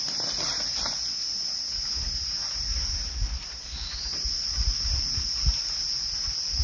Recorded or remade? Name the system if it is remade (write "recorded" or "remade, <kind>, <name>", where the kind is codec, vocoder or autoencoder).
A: recorded